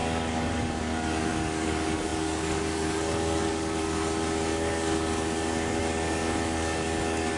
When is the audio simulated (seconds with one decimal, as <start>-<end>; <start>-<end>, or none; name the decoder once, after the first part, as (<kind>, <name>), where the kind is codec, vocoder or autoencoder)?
0.0-7.4 (codec, DAC)